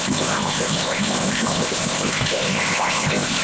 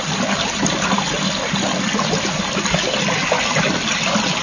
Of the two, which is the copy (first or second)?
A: first